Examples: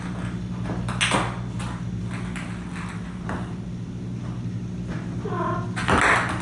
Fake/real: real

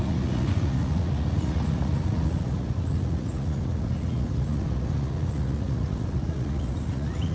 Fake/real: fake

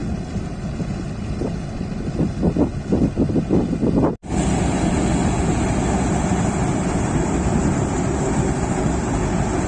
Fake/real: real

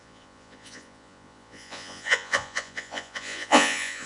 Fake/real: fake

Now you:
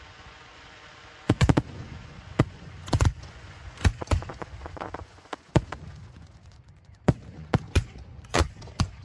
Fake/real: fake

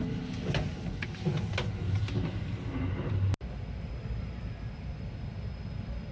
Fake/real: real